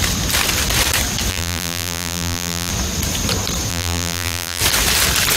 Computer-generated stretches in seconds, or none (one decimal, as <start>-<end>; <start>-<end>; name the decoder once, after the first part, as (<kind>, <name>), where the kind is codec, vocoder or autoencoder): 1.3-2.7 (vocoder, BigVGAN v2); 3.7-4.6